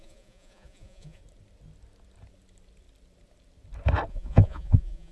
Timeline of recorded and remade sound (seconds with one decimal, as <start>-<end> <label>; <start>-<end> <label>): 0.0-1.2 remade; 1.2-4.1 recorded; 4.1-5.1 remade